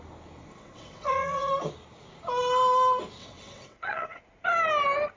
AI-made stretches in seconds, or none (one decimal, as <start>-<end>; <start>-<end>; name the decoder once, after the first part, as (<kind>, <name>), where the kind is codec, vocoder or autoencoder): 0.5-1.5 (vocoder, WaveNeXt); 3.2-4.2